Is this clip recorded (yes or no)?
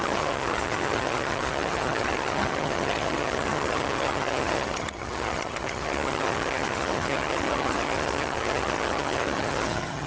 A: no